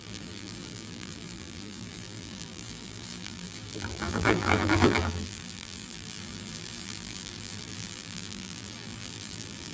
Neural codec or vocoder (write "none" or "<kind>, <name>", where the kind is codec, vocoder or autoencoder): vocoder, BigVGAN v2